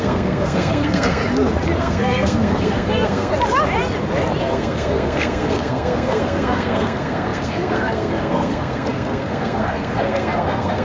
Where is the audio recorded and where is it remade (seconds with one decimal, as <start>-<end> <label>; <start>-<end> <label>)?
0.0-1.2 remade; 1.2-1.8 recorded; 1.8-3.3 remade; 3.3-4.4 recorded; 4.4-10.8 remade